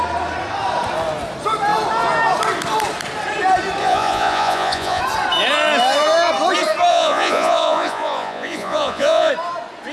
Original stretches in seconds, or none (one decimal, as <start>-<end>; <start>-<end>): 0.0-3.8; 5.0-6.9; 9.3-9.9